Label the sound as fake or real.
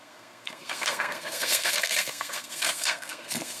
fake